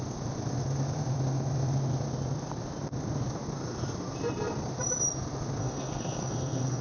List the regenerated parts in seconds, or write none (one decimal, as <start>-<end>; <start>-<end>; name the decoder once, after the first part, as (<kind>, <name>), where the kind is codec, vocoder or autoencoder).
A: 5.6-6.8 (codec, SNAC)